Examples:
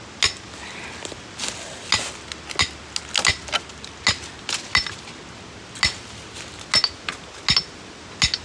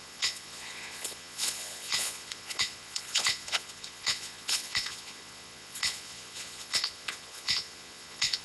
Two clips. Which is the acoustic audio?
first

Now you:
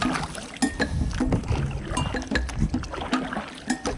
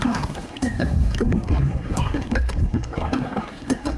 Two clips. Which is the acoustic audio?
first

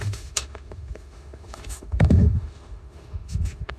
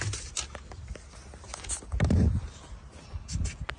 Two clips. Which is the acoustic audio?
second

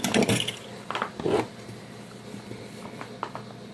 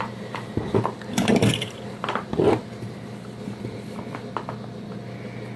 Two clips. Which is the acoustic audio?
first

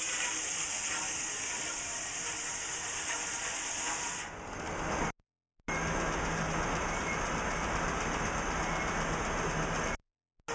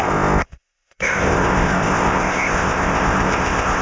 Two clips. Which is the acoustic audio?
first